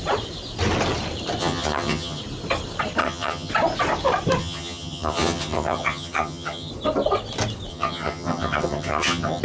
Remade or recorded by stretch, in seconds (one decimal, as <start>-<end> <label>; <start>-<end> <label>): 0.0-1.4 recorded; 1.4-2.2 remade; 2.2-3.0 recorded; 3.0-3.5 remade; 3.5-4.4 recorded; 4.4-6.7 remade; 6.7-7.7 recorded; 7.7-9.4 remade